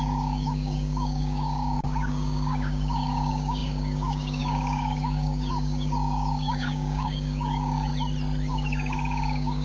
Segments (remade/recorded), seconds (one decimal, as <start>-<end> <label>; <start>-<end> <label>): 0.0-7.9 remade; 7.9-8.5 recorded; 8.5-9.6 remade